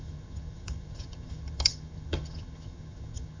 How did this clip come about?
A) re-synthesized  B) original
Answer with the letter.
A